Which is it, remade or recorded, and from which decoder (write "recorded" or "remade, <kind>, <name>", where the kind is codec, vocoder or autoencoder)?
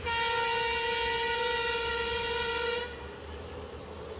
recorded